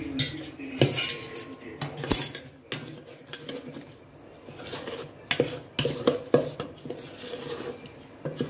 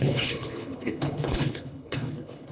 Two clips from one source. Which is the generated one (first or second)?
second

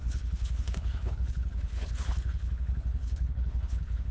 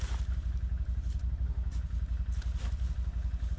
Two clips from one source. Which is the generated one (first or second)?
first